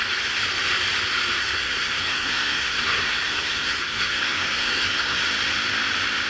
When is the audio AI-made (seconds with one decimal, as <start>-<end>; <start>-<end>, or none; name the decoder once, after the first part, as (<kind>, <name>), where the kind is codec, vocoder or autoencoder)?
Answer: 1.4-5.2 (codec, SNAC)

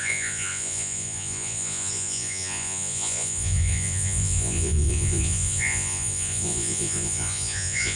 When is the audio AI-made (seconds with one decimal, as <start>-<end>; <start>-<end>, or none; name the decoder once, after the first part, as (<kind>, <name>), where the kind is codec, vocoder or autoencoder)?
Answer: 0.0-8.0 (vocoder, Vocos)

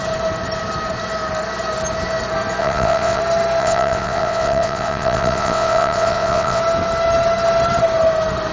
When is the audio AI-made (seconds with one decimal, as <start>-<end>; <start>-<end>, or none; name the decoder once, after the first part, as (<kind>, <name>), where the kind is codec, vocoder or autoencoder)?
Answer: 2.6-3.2 (vocoder, WaveNeXt); 3.6-6.6

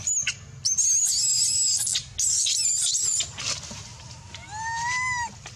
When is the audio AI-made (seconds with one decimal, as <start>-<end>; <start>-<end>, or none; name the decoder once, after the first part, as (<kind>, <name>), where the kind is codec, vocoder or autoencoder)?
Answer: none